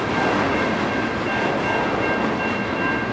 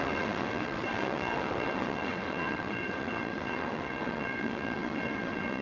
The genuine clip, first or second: first